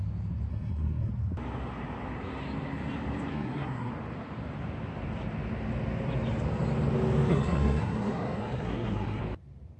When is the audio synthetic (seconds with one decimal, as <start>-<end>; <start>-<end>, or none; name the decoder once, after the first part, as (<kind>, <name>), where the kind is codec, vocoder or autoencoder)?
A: 0.5-1.1 (codec, SNAC); 3.3-3.9; 7.3-9.2